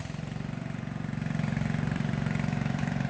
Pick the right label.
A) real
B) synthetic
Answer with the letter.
B